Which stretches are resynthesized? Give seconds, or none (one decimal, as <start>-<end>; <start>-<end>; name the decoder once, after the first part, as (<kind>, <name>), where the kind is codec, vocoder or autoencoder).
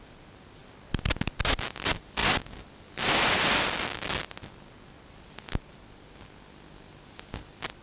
none